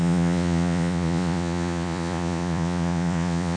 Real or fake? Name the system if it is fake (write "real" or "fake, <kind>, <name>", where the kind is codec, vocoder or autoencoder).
fake, vocoder, Vocos